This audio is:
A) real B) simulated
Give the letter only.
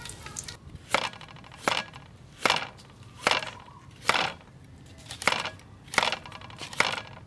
A